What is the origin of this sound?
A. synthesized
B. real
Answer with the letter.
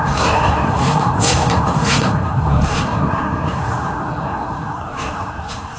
A